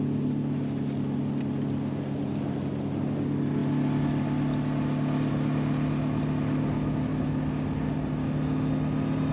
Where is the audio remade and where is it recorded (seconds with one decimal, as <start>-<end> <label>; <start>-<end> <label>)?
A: 0.0-9.3 recorded

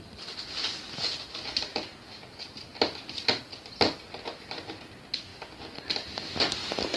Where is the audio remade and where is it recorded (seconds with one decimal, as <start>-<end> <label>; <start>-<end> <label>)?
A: 0.0-7.0 recorded

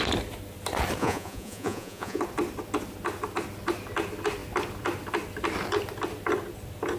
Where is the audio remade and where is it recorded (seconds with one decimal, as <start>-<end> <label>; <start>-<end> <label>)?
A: 0.0-1.0 recorded; 1.0-2.2 remade; 2.2-7.0 recorded

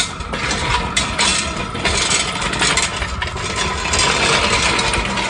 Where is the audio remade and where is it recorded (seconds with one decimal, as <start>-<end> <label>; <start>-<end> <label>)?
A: 0.0-5.3 recorded

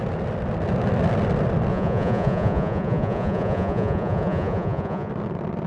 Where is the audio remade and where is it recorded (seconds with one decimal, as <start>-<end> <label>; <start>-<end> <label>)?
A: 0.0-1.7 recorded; 1.7-5.1 remade; 5.1-5.7 recorded

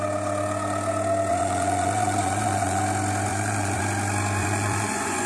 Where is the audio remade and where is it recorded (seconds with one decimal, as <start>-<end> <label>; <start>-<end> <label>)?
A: 0.0-1.3 recorded; 1.3-2.8 remade; 2.8-3.3 recorded; 3.3-3.8 remade; 3.8-4.4 recorded; 4.4-5.3 remade

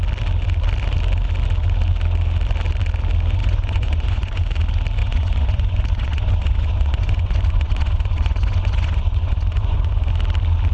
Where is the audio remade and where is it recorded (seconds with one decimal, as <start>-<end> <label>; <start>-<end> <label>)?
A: 0.0-3.4 recorded; 3.4-4.4 remade; 4.4-5.0 recorded; 5.0-10.1 remade; 10.1-10.7 recorded

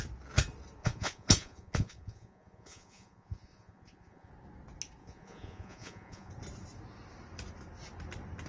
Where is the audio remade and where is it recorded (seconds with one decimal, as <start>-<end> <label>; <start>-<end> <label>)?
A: 0.0-0.8 recorded; 0.8-4.3 remade; 4.3-5.0 recorded; 5.0-6.3 remade; 6.3-8.5 recorded